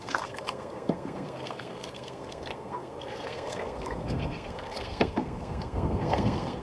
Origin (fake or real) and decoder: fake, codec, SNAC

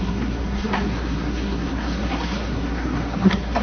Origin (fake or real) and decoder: fake, codec, SNAC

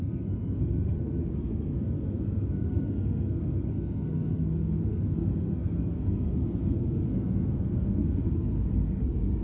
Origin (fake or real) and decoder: fake, codec, SNAC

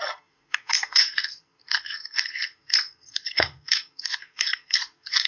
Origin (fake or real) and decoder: fake, codec, SNAC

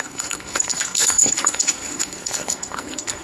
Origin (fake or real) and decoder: fake, codec, SNAC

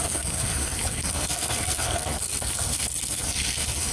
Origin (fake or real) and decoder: fake, codec, SNAC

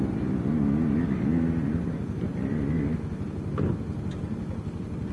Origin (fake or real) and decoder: real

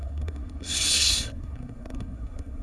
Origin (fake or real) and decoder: fake, codec, SNAC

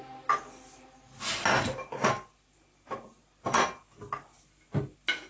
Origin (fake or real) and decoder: real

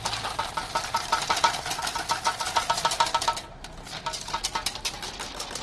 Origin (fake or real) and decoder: real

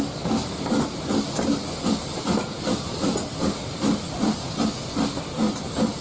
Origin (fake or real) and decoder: real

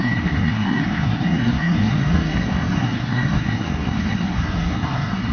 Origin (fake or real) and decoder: fake, codec, SNAC